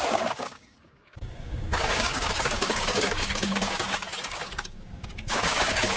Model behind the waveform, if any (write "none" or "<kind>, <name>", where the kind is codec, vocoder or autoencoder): codec, DAC